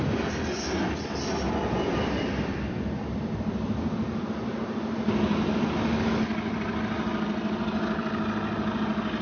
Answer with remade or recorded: recorded